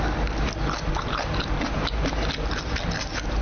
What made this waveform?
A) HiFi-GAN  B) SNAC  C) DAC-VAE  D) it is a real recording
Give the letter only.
D